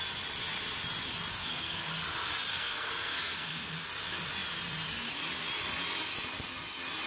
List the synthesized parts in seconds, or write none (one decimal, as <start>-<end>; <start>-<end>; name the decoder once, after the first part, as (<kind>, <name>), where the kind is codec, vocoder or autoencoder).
1.4-1.9 (codec, SNAC); 2.5-3.7